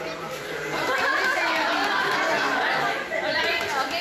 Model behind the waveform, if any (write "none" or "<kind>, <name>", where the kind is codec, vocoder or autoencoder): none